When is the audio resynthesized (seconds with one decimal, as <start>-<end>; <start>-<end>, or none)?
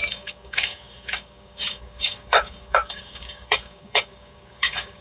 0.0-5.0